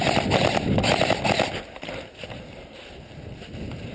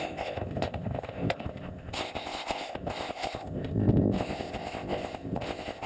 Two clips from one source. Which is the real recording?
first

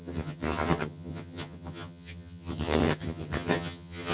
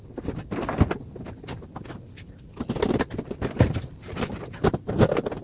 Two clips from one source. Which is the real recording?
second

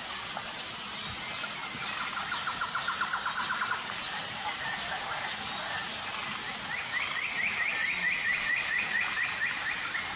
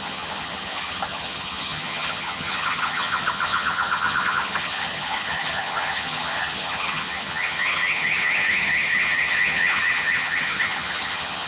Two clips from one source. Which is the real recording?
first